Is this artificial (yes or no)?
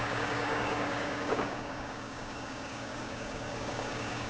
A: yes